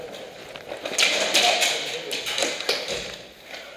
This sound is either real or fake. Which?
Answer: real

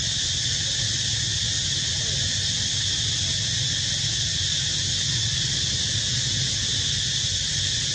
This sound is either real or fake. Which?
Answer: real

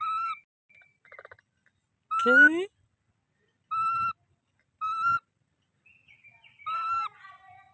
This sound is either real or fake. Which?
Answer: real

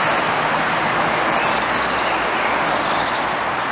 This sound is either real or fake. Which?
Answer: real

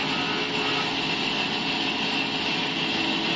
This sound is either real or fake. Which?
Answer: real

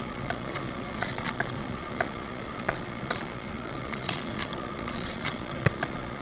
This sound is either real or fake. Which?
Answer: fake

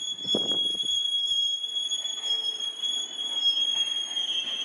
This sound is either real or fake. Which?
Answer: fake